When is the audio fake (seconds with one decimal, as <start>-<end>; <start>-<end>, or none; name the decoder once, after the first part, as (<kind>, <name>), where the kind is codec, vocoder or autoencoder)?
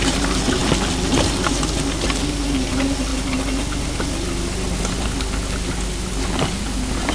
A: none